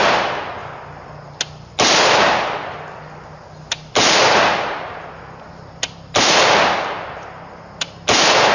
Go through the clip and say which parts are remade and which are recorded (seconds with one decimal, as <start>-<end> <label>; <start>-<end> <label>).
0.0-8.5 recorded